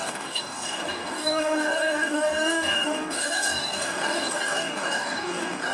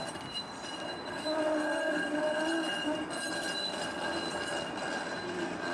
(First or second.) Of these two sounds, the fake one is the first